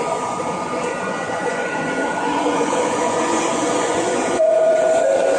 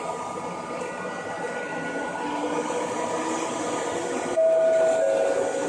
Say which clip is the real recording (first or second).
second